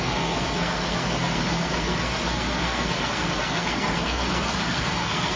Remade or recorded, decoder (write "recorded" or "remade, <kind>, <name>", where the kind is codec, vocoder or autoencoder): remade, codec, SNAC